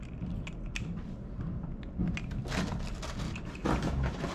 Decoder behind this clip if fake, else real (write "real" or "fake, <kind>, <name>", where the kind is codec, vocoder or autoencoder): real